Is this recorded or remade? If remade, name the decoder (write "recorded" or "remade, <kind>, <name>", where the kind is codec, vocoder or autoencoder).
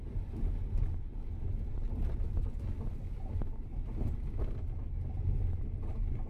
recorded